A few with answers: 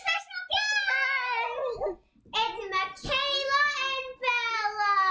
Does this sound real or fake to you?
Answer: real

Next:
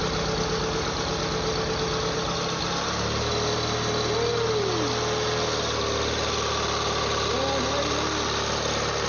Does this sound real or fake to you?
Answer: real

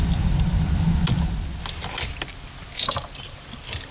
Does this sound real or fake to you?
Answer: real